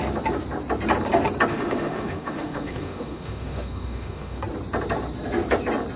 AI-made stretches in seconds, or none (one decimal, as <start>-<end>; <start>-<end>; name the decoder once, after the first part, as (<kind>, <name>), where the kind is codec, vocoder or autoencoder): 1.5-4.4 (autoencoder, DAC-VAE)